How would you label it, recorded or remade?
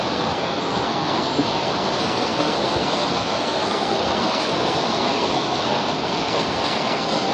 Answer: remade